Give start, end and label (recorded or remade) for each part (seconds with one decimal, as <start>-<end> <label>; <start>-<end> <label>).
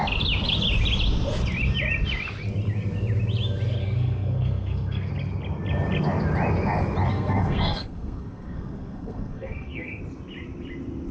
0.0-3.8 recorded; 3.8-5.1 remade; 5.1-7.1 recorded; 7.1-10.0 remade; 10.0-11.1 recorded